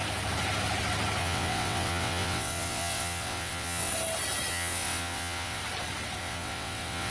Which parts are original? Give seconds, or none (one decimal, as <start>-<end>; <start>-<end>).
0.0-1.2; 3.9-4.5; 5.6-6.2